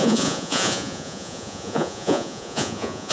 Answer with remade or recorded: remade